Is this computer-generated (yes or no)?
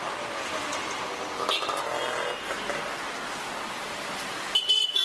no